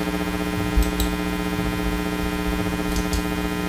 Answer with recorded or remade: recorded